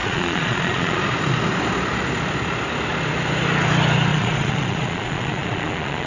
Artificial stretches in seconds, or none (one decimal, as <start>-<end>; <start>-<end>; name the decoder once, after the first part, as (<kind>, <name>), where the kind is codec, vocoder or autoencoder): 0.0-1.0 (vocoder, Vocos); 4.1-6.1